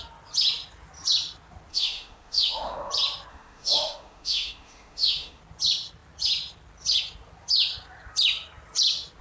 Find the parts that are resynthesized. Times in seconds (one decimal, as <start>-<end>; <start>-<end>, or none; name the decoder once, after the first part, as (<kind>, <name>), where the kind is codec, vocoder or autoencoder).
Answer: 1.7-2.9 (autoencoder, DAC-VAE); 3.3-5.4